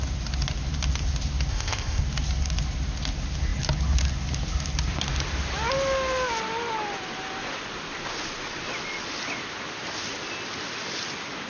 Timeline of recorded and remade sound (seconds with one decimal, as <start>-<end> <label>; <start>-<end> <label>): 0.0-1.5 recorded; 1.5-2.0 remade; 2.0-11.5 recorded